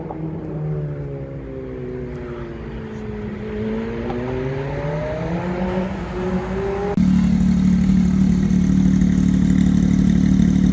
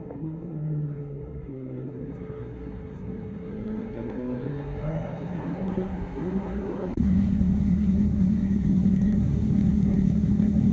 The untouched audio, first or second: first